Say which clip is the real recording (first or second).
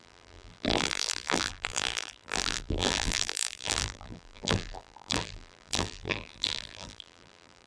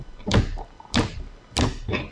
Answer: second